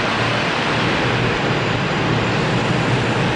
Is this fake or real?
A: real